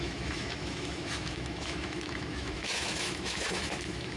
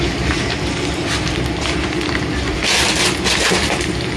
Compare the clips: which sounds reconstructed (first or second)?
first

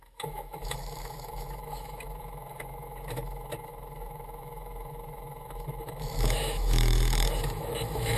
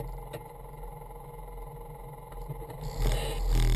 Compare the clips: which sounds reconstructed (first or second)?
first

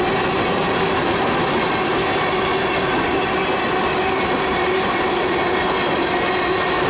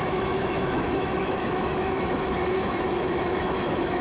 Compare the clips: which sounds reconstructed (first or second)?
second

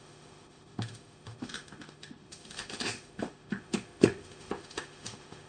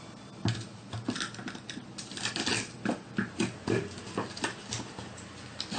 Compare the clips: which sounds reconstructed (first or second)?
first